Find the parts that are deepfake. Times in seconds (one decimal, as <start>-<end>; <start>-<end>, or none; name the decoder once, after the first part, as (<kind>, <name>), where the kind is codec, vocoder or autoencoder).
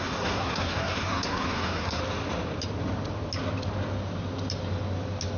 0.0-2.0 (codec, SNAC)